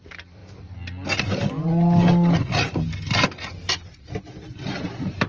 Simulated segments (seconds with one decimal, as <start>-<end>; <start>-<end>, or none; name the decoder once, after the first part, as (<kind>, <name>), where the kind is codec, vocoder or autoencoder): 0.0-0.4 (vocoder, BigVGAN v2); 1.2-1.7; 4.1-5.3